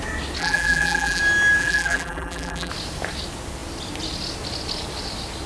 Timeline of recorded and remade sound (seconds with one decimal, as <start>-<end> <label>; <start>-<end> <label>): 0.0-0.4 recorded; 0.4-1.2 remade; 1.2-1.6 recorded; 1.6-2.7 remade; 2.7-5.5 recorded